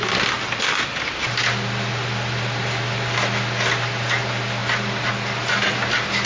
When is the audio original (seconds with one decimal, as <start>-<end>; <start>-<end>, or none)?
0.0-6.3